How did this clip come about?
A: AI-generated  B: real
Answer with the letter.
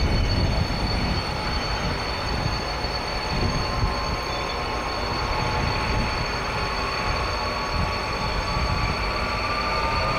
B